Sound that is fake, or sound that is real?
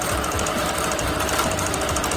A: fake